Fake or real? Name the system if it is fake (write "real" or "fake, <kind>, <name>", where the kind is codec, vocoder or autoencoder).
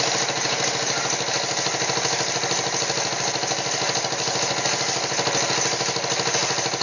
real